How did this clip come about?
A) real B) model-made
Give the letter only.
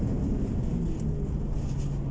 A